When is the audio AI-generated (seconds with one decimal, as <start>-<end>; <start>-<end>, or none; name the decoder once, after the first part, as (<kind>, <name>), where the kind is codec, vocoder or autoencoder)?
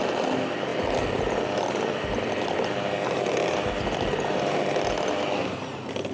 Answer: none